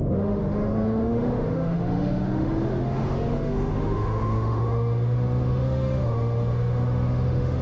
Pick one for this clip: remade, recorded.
remade